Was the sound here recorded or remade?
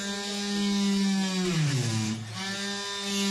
recorded